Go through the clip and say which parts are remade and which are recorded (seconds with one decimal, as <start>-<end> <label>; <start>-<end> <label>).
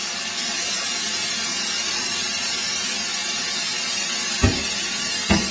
0.0-5.5 recorded